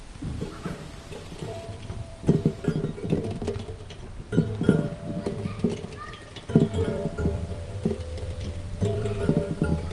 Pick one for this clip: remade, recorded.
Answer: remade